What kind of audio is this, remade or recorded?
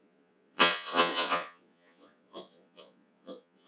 remade